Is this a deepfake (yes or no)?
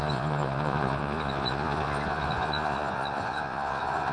yes